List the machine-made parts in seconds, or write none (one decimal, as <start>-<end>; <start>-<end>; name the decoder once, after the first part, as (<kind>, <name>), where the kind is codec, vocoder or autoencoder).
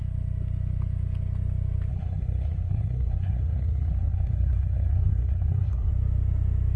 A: 1.9-5.9 (codec, SNAC)